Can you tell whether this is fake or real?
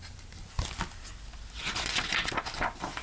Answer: real